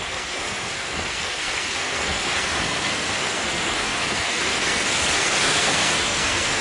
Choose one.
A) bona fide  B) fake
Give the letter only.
B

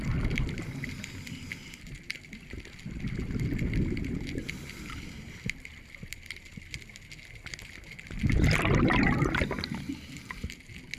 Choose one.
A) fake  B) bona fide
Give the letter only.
B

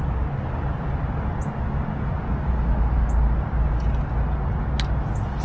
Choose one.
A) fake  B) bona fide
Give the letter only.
B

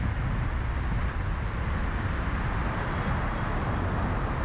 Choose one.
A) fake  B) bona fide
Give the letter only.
B